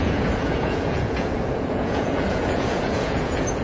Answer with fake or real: fake